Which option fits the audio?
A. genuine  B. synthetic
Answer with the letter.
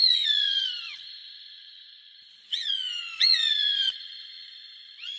B